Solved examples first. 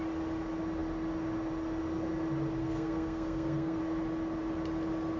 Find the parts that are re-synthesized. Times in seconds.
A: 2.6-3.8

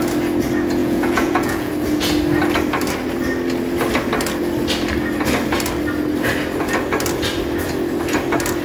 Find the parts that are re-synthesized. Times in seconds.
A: 0.8-1.7

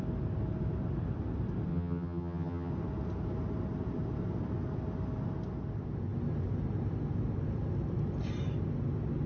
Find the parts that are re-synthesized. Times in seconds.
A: 1.7-2.7

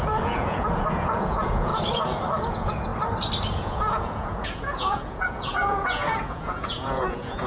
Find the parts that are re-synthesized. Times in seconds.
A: 0.0-1.7; 2.5-2.9; 3.5-7.5

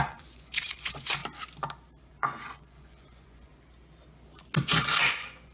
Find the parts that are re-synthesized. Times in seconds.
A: 0.0-1.2; 2.1-3.5; 4.6-5.5

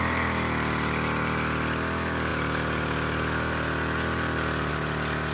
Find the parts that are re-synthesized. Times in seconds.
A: none